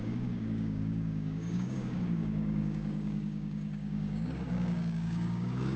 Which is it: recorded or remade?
remade